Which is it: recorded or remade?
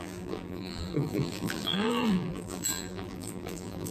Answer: remade